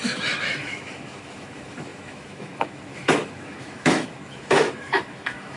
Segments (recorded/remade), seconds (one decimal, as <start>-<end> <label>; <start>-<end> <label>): 0.0-5.6 remade